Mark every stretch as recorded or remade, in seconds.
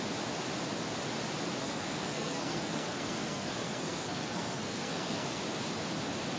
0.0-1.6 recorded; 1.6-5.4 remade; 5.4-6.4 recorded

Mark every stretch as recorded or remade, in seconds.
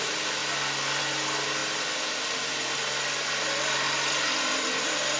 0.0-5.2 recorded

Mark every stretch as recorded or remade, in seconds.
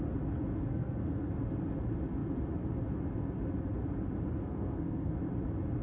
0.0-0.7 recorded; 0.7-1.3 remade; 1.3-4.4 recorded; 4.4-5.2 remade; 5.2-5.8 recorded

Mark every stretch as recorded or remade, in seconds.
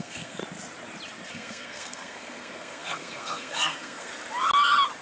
0.0-0.4 remade; 0.4-1.3 recorded; 1.3-4.1 remade; 4.1-5.0 recorded